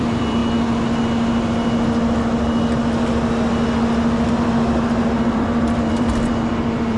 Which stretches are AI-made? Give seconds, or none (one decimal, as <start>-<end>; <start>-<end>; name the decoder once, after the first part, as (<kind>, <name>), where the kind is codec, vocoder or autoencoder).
0.0-0.4 (vocoder, BigVGAN v2); 4.3-7.0